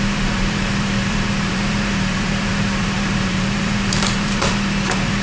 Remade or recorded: remade